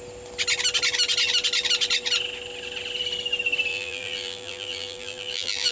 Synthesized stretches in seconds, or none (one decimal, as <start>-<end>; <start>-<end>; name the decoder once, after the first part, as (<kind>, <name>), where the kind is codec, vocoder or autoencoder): 3.7-5.7 (vocoder, BigVGAN v2)